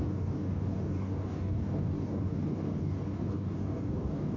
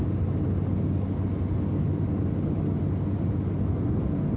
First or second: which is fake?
first